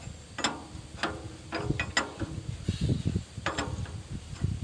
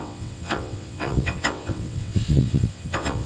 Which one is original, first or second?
first